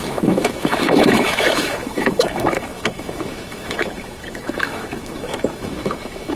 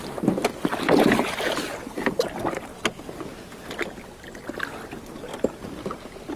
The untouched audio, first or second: second